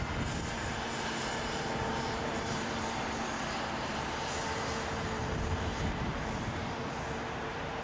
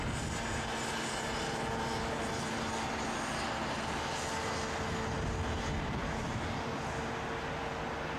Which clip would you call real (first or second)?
second